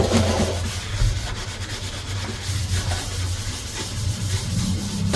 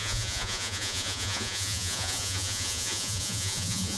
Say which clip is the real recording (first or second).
first